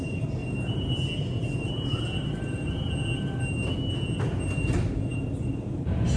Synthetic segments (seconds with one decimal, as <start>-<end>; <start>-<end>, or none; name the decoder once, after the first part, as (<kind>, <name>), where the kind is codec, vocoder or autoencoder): 0.4-2.7 (vocoder, BigVGAN v2)